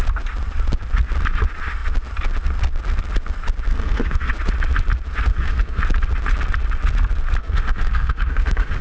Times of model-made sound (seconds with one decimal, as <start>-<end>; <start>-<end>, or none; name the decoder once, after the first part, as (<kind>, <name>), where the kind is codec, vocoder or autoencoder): 3.7-4.3 (codec, SNAC); 5.3-5.8; 7.4-8.8